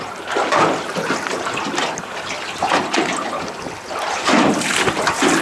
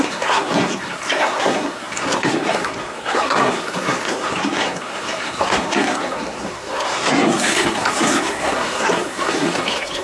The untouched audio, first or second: first